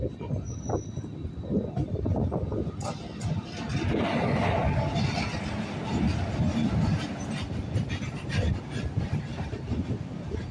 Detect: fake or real real